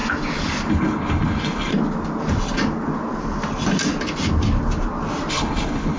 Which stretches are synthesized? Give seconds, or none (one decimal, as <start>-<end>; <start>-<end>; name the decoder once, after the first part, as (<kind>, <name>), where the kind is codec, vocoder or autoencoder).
0.7-1.7 (codec, HILCodec); 5.3-6.0